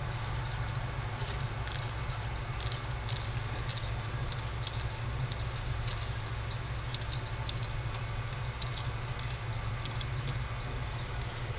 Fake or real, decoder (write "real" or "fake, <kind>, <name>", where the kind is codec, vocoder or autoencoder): real